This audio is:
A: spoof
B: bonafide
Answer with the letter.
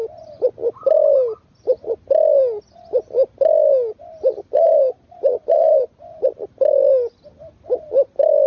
B